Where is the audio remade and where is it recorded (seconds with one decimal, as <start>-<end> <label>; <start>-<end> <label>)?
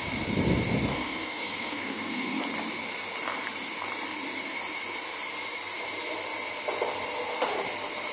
0.0-0.9 recorded; 0.9-2.4 remade; 2.4-8.1 recorded